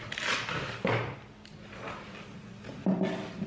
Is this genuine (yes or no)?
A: yes